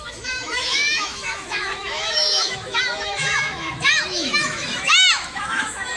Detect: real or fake fake